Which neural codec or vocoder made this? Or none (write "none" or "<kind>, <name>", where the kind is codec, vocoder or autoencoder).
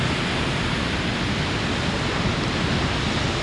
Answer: none